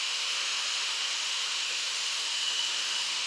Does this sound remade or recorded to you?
remade